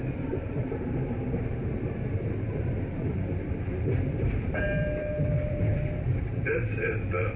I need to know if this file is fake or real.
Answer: fake